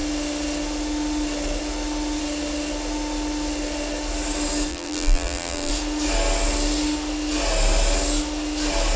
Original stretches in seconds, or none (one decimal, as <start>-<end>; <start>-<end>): 0.0-4.7; 5.7-9.0